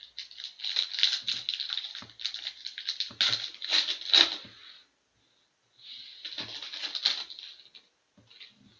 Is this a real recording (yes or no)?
yes